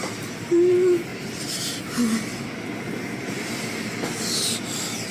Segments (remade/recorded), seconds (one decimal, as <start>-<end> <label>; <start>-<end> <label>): 0.0-5.1 recorded